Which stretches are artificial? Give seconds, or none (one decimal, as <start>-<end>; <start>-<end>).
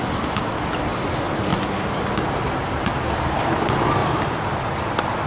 none